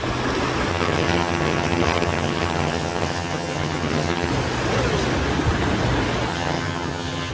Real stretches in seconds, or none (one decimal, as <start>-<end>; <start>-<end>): 0.0-0.7; 4.3-6.3